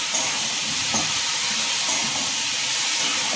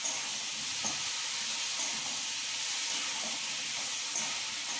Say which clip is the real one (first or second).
second